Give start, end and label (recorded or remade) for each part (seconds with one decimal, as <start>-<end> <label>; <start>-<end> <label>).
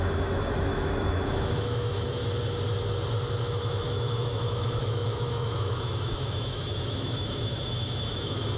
0.0-2.2 remade; 2.2-3.4 recorded; 3.4-8.6 remade